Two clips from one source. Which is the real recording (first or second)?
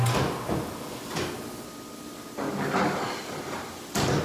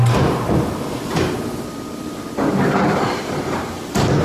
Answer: first